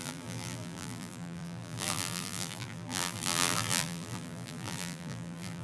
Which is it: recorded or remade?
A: remade